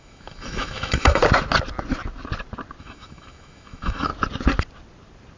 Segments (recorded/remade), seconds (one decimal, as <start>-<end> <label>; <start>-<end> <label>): 0.0-1.2 remade; 1.2-2.8 recorded; 2.8-4.1 remade; 4.1-5.4 recorded